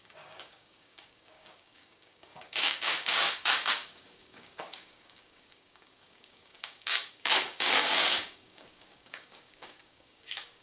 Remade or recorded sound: remade